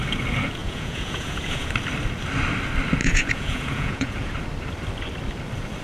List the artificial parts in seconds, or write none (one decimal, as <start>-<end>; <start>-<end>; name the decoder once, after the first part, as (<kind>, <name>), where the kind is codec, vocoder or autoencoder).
0.6-1.7 (vocoder, Vocos); 3.0-4.3